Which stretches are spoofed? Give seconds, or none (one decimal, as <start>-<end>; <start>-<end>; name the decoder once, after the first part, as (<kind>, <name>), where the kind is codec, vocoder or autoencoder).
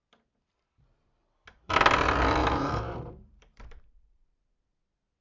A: 2.4-4.4 (vocoder, BigVGAN v2)